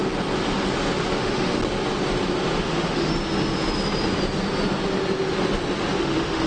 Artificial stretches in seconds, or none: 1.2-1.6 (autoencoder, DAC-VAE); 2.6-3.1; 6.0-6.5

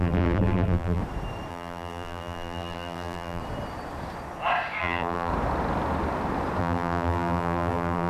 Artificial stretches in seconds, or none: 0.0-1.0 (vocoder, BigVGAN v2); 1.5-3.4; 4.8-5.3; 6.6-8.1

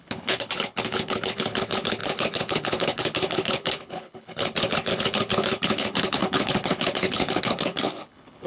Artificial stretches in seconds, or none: 0.0-8.5 (codec, HILCodec)

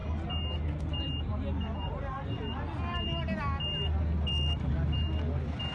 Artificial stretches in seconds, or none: none

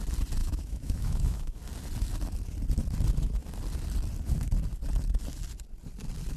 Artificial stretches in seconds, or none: 0.4-1.6 (autoencoder, DAC-VAE)

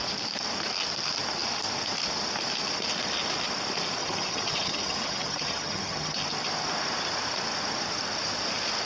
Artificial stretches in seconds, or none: 4.0-6.2 (vocoder, HiFi-GAN)

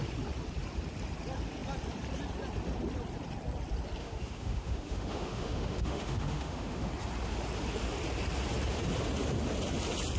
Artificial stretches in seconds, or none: 4.0-6.9 (autoencoder, DAC-VAE)

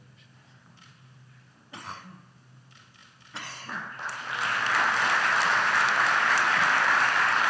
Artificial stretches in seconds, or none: none